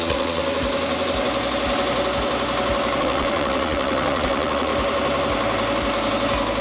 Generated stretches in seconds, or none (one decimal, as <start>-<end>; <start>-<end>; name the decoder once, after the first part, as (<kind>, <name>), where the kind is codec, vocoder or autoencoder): 0.0-0.4 (vocoder, WaveNeXt); 3.0-4.7